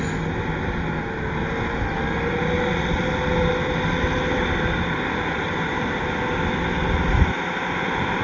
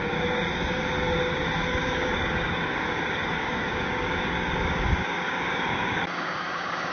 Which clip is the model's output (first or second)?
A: second